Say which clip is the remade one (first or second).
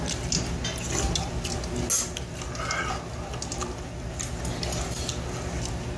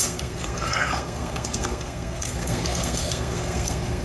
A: second